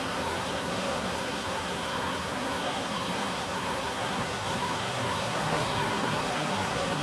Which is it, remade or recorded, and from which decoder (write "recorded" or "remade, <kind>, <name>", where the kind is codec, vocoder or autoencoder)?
remade, codec, SNAC